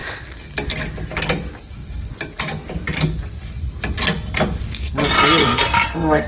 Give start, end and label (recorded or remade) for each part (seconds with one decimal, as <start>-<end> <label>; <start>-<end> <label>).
0.0-5.4 recorded; 5.4-6.3 remade